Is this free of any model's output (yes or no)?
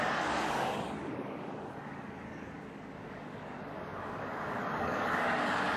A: no